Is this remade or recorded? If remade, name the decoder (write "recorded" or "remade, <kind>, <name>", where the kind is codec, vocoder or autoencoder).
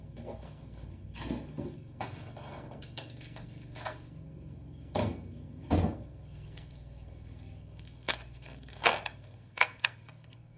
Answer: remade, codec, SNAC